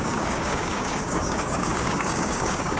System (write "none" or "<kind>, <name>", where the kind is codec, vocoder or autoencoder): codec, DAC